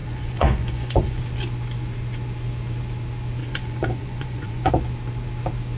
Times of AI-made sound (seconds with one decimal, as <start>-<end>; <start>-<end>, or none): 0.0-1.2; 3.4-4.7